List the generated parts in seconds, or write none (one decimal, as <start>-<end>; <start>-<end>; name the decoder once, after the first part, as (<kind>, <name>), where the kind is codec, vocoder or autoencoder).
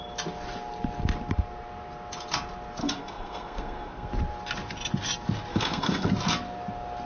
2.8-4.1 (codec, SNAC); 5.5-6.1